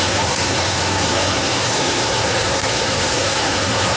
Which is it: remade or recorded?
remade